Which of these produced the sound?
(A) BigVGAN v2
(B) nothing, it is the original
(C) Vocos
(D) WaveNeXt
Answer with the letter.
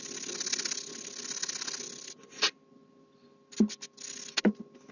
B